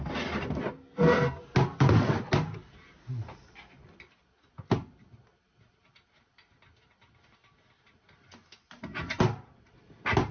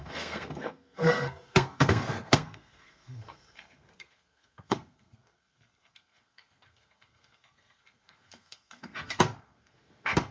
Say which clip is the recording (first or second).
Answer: first